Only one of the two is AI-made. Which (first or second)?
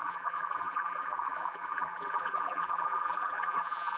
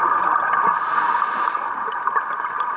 first